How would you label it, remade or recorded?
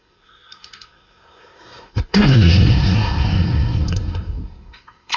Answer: remade